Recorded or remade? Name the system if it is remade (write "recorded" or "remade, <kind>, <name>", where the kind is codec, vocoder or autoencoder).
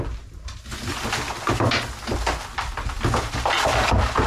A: recorded